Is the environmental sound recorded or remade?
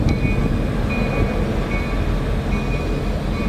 recorded